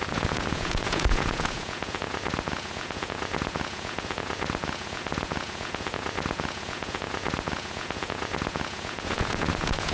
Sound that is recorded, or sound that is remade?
remade